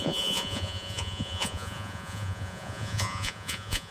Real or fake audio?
fake